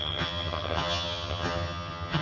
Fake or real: fake